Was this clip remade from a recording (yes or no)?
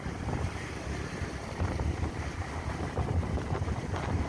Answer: no